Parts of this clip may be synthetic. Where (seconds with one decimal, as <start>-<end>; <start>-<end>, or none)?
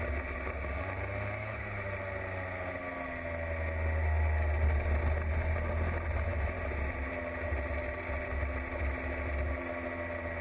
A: none